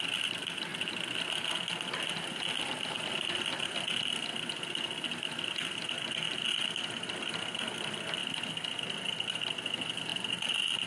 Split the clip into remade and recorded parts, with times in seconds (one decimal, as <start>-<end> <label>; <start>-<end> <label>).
0.0-8.2 recorded; 8.2-8.8 remade; 8.8-10.9 recorded